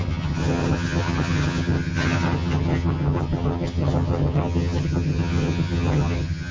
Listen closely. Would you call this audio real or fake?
fake